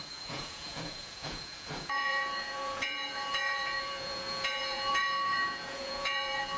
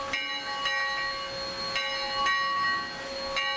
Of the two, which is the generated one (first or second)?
first